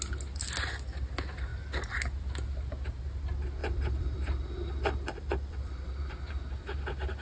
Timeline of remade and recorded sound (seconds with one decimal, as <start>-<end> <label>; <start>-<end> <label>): 0.0-3.6 recorded; 3.6-5.9 remade; 5.9-7.2 recorded